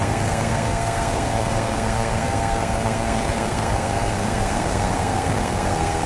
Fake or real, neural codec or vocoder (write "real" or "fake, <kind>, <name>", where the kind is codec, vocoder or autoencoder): fake, codec, SNAC